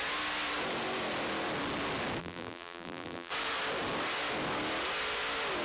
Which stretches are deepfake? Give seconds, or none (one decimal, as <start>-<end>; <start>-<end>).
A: 2.2-3.3